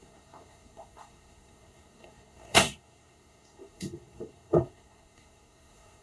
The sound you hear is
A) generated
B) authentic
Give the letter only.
A